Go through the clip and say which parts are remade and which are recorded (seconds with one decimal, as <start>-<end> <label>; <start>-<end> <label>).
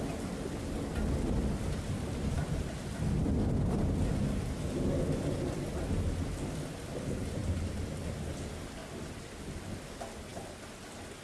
0.0-0.9 recorded; 0.9-3.8 remade; 3.8-11.2 recorded